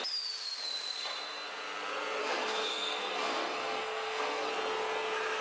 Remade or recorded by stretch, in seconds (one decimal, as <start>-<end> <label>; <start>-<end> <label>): 0.0-2.2 recorded; 2.2-4.5 remade; 4.5-5.4 recorded